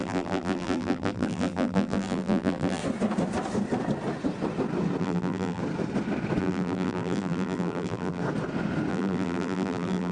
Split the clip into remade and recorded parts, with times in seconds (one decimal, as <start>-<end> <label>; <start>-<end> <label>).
0.0-2.8 remade; 2.8-5.0 recorded; 5.0-5.6 remade; 5.6-6.4 recorded; 6.4-8.2 remade; 8.2-8.9 recorded; 8.9-10.1 remade